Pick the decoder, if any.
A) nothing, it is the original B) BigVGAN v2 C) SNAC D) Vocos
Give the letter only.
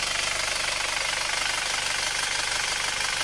A